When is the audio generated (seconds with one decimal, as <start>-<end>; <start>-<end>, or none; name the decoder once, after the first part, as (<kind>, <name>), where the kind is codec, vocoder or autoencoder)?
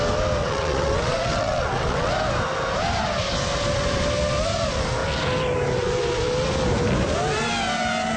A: 0.4-2.1 (vocoder, WaveNeXt)